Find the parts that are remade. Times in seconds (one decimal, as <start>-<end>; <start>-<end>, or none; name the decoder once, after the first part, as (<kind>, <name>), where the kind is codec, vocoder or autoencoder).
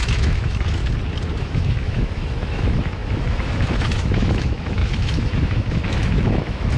0.0-0.8 (autoencoder, DAC-VAE); 1.4-6.8